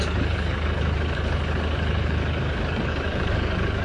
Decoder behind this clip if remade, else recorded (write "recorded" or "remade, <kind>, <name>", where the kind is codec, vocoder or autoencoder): remade, codec, DAC